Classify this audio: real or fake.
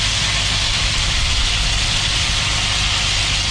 real